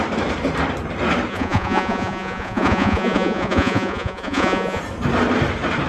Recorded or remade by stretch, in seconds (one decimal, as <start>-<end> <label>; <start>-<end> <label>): 0.0-1.3 recorded; 1.3-4.8 remade; 4.8-5.9 recorded